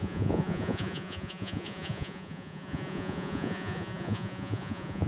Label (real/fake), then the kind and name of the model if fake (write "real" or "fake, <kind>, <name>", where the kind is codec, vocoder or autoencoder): fake, vocoder, Vocos